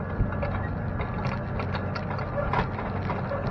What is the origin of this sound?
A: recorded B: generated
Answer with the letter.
A